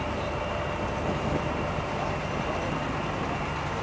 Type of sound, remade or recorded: recorded